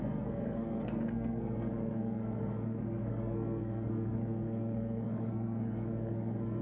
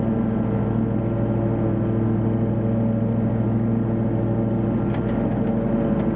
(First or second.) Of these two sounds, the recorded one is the second